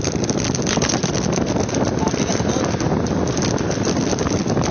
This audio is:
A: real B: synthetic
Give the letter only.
A